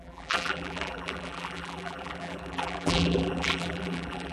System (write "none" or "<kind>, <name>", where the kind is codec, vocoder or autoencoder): vocoder, BigVGAN v2